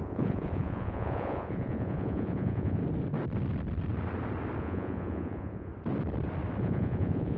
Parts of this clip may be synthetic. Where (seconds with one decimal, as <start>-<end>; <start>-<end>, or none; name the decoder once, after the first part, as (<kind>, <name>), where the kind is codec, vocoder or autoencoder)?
0.0-2.8 (vocoder, Vocos); 4.6-5.7; 6.6-7.4